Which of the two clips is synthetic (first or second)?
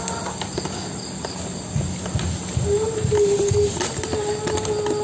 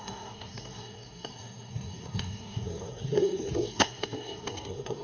second